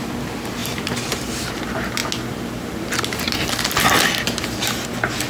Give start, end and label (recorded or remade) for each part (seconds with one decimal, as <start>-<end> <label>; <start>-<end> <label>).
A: 0.0-0.6 recorded; 0.6-1.6 remade; 1.6-5.3 recorded